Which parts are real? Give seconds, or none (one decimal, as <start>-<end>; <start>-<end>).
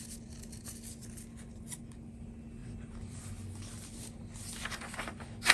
0.0-2.6; 3.2-5.5